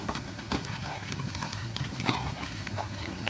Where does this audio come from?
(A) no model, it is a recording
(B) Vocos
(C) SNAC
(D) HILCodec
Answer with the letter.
C